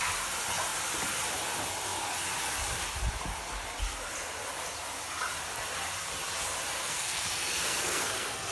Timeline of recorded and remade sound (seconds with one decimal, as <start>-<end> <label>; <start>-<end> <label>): 0.0-6.8 recorded; 6.8-8.5 remade